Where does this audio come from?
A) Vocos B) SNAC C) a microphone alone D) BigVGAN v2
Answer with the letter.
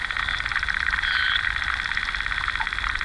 C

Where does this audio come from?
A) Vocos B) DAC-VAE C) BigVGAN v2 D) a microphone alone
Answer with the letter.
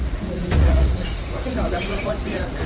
A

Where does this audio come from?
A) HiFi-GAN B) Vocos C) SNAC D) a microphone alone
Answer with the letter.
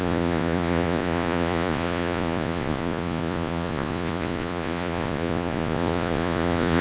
B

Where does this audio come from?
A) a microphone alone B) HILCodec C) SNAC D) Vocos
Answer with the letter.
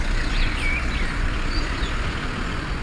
D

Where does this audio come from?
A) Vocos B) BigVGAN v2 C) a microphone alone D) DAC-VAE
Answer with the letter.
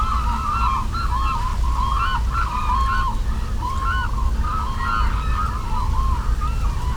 C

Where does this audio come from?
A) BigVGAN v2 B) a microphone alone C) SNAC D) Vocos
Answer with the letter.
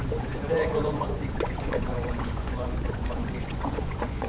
D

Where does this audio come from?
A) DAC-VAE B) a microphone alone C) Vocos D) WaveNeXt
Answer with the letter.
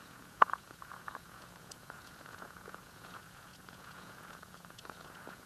C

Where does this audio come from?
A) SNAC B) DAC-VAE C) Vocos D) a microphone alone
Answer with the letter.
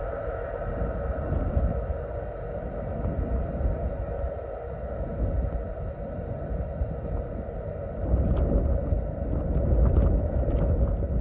D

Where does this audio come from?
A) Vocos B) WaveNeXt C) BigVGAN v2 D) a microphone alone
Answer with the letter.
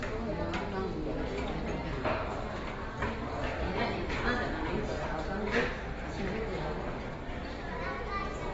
D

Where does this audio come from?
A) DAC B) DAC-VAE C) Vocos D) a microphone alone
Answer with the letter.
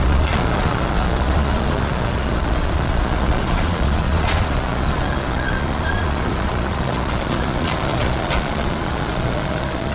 C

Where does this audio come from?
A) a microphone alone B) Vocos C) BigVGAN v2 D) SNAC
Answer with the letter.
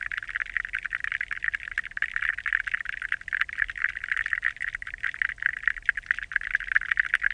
A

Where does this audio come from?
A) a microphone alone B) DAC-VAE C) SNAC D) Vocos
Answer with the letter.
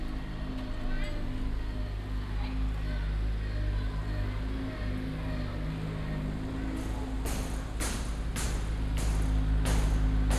A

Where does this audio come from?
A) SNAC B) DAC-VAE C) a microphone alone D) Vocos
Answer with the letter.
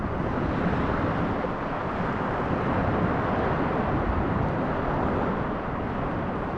C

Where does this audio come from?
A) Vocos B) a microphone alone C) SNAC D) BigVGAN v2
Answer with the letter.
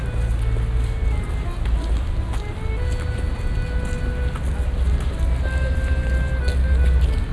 B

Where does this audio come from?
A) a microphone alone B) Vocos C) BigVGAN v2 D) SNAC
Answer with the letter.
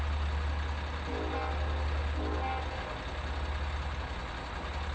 A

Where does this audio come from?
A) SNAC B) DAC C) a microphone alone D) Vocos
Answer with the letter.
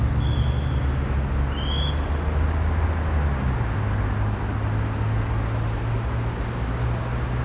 C